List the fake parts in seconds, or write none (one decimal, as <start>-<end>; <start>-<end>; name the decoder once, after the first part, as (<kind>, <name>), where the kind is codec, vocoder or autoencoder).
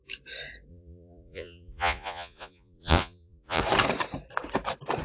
0.7-3.6 (vocoder, Vocos)